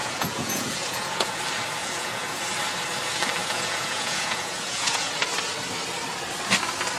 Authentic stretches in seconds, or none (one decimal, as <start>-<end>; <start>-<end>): 1.4-1.8; 2.4-3.4; 5.1-7.0